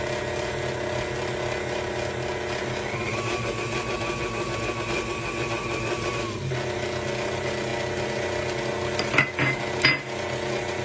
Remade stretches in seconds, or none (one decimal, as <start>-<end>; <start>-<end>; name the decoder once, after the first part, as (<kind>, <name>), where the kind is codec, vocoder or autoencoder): none